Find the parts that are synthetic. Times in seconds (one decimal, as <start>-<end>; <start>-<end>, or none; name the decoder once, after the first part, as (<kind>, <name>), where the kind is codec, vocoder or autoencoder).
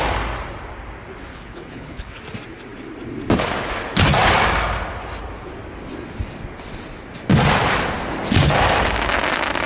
1.3-2.2 (codec, HILCodec)